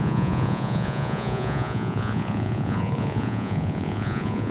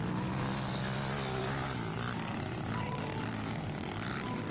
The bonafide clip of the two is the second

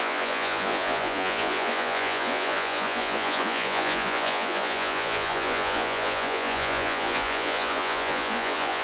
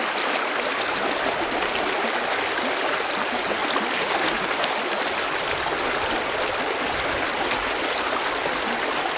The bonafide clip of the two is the second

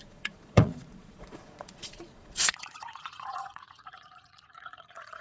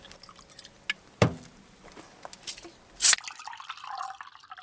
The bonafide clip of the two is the second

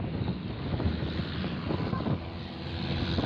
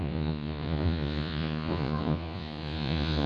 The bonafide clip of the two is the first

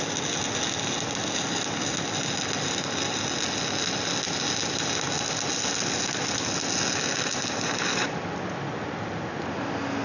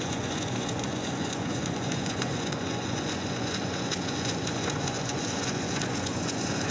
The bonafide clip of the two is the first